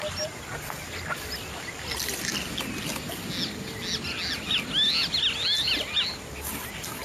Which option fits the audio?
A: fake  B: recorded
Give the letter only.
B